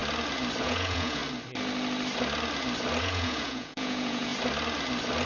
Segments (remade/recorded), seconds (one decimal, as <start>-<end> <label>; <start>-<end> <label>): 0.0-0.6 recorded; 0.6-1.2 remade; 1.2-3.0 recorded; 3.0-4.3 remade; 4.3-5.3 recorded